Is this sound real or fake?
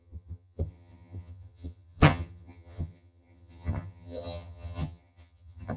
fake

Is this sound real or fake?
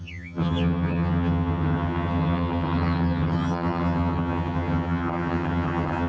fake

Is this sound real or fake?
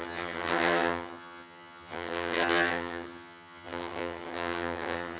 fake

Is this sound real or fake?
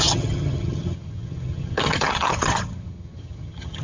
fake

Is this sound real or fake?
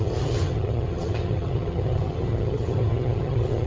fake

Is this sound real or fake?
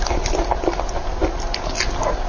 real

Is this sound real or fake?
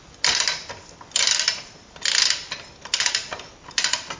real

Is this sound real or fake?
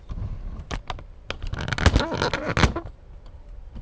real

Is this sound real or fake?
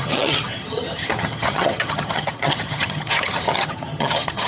fake